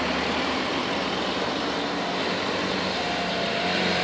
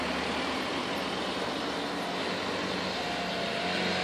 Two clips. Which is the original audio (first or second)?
second